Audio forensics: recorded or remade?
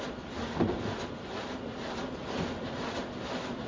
recorded